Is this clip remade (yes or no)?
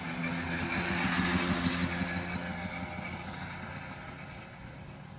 no